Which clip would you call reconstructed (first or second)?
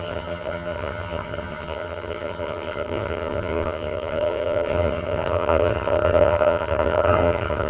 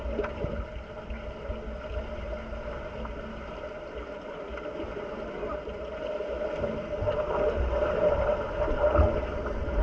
first